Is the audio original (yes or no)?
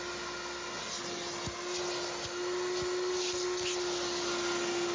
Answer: yes